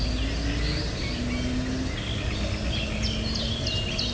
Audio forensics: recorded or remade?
recorded